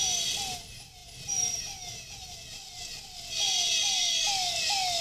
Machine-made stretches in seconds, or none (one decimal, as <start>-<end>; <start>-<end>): 1.0-1.6